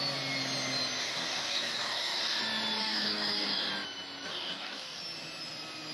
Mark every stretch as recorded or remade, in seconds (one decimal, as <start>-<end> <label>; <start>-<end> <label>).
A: 0.0-1.0 recorded; 1.0-2.4 remade; 2.4-2.8 recorded; 2.8-3.7 remade; 3.7-4.3 recorded; 4.3-5.0 remade; 5.0-5.9 recorded